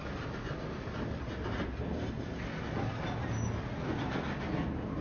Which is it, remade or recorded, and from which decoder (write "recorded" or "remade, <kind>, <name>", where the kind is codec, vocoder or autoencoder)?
recorded